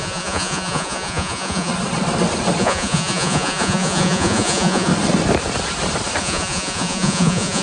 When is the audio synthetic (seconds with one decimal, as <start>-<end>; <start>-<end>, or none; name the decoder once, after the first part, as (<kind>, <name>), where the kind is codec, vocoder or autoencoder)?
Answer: 0.0-1.7 (vocoder, Vocos); 2.6-4.9; 6.2-7.6